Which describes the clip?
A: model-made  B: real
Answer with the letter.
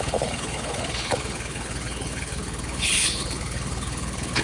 A